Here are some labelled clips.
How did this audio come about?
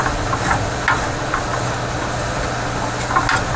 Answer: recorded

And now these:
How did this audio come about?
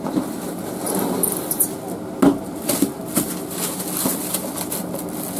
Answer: recorded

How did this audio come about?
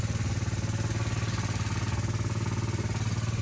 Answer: recorded